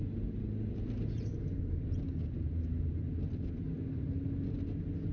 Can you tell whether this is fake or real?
real